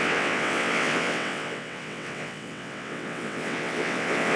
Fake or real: fake